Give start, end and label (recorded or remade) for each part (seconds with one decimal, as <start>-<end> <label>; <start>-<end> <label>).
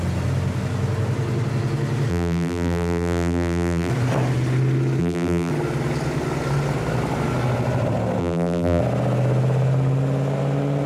0.0-2.1 recorded; 2.1-3.9 remade; 3.9-5.0 recorded; 5.0-5.5 remade; 5.5-8.2 recorded; 8.2-8.8 remade; 8.8-10.9 recorded